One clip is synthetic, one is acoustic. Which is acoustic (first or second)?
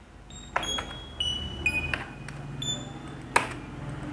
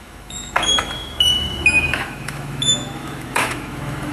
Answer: first